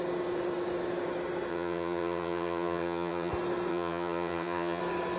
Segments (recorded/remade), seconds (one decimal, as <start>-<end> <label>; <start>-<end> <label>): 0.0-1.5 recorded; 1.5-3.3 remade; 3.3-3.7 recorded; 3.7-4.8 remade; 4.8-5.2 recorded